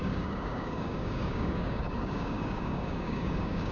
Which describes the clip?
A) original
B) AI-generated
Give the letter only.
B